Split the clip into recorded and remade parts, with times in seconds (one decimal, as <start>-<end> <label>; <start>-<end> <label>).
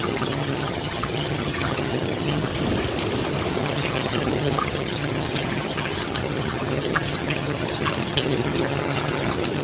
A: 0.0-2.5 remade; 2.5-3.5 recorded; 3.5-9.6 remade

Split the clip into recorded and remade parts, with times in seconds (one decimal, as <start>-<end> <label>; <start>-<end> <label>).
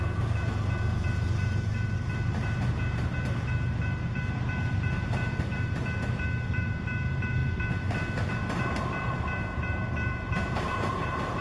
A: 0.0-11.4 remade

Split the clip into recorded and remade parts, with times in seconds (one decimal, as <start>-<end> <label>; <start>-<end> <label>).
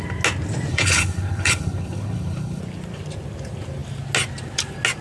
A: 0.0-0.7 recorded; 0.7-2.6 remade; 2.6-5.0 recorded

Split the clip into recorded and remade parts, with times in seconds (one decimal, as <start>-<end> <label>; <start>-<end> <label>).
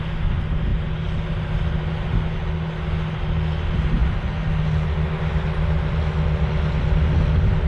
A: 0.0-7.7 recorded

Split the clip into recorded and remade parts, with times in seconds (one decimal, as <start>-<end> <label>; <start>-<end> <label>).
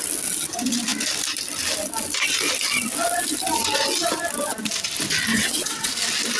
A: 0.0-5.3 recorded; 5.3-5.9 remade; 5.9-6.4 recorded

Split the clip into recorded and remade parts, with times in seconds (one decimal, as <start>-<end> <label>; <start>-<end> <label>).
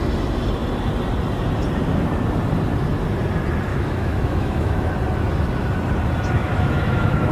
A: 0.0-3.7 recorded; 3.7-4.9 remade; 4.9-6.4 recorded; 6.4-7.3 remade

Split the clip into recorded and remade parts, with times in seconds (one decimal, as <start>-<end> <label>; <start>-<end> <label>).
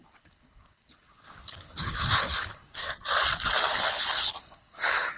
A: 0.0-2.8 remade; 2.8-3.7 recorded; 3.7-5.2 remade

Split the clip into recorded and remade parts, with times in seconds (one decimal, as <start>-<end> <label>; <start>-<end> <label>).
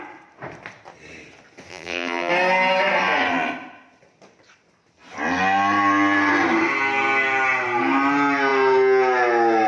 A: 0.0-1.7 recorded; 1.7-2.3 remade; 2.3-9.7 recorded